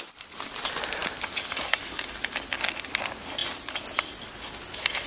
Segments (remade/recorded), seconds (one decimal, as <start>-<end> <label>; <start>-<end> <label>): 0.0-1.0 recorded; 1.0-1.9 remade; 1.9-5.1 recorded